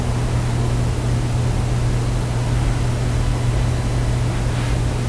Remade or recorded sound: recorded